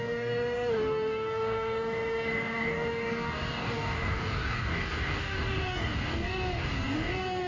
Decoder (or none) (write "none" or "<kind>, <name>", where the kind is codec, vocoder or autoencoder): codec, DAC